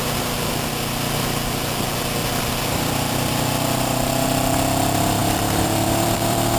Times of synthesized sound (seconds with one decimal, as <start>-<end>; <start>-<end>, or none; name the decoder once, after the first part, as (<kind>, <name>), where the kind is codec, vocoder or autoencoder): 2.2-3.5 (vocoder, BigVGAN v2); 5.2-6.6